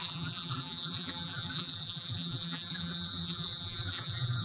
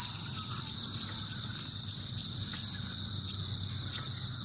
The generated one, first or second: first